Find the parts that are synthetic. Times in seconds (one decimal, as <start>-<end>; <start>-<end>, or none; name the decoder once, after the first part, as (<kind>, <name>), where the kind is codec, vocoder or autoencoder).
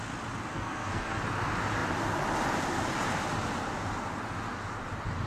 0.5-1.2 (codec, SNAC)